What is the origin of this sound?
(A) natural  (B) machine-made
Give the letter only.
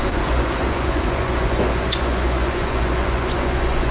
B